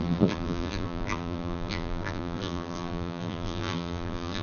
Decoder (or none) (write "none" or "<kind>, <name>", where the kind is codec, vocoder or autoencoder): vocoder, BigVGAN v2